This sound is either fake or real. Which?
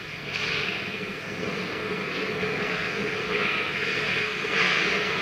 fake